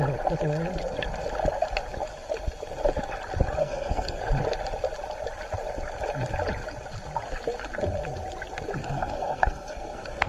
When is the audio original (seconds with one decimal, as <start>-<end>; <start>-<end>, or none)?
0.0-3.6; 4.2-8.8